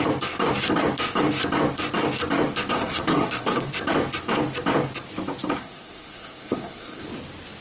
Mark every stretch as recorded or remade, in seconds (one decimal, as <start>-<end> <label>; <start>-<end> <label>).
0.0-2.7 recorded; 2.7-3.7 remade; 3.7-5.6 recorded; 5.6-7.0 remade; 7.0-7.6 recorded